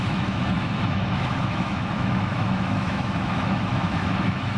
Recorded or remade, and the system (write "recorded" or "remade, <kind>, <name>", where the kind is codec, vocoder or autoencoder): remade, autoencoder, DAC-VAE